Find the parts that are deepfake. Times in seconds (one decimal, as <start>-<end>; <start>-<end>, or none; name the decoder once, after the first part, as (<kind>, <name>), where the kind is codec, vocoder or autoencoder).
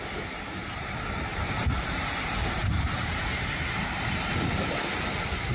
1.3-4.1 (vocoder, BigVGAN v2)